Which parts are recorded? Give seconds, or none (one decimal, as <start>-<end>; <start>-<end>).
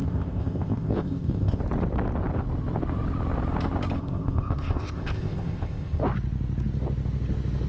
1.6-4.0; 6.0-7.7